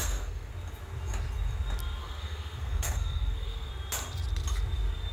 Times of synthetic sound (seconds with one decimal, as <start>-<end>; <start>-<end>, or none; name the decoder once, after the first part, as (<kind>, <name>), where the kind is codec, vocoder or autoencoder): 0.0-0.5 (codec, SNAC); 2.0-3.7